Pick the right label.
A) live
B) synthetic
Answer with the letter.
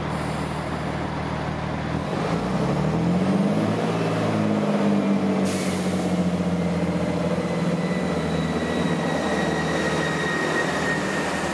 A